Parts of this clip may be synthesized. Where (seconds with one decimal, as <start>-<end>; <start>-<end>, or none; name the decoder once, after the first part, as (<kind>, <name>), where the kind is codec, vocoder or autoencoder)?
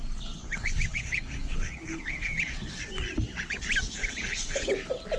0.4-2.8 (codec, HILCodec); 4.0-4.7